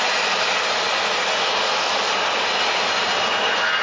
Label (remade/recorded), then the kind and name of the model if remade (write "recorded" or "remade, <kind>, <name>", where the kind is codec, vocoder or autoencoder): recorded